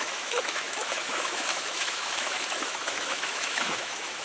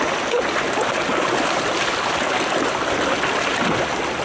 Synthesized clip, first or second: first